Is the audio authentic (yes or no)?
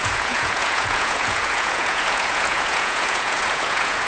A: no